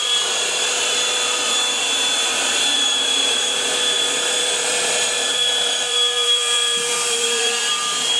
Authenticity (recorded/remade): remade